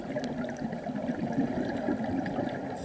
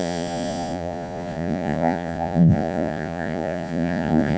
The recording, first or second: first